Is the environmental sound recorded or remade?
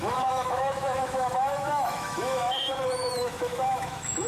remade